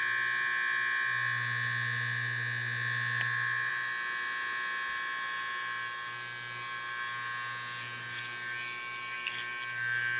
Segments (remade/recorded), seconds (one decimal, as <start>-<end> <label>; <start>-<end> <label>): 0.0-10.2 recorded